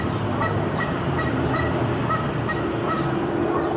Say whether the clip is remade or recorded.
remade